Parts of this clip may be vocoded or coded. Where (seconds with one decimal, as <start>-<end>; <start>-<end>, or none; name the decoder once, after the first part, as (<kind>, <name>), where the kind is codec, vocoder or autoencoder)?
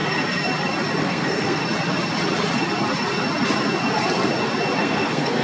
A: 1.0-1.6 (codec, SNAC); 4.8-5.4